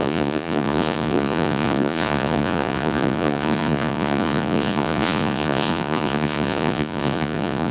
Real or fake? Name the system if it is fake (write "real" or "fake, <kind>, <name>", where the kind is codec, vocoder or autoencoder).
fake, vocoder, Vocos